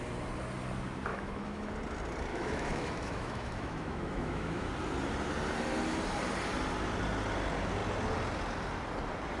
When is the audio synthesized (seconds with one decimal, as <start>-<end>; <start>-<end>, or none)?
1.1-1.7; 2.3-4.7